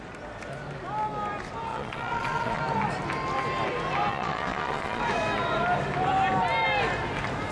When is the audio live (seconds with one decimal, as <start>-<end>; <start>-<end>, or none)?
0.0-1.7; 2.6-4.1; 5.0-7.5